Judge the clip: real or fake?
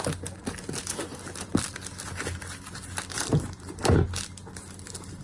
real